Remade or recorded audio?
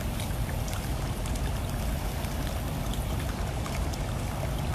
recorded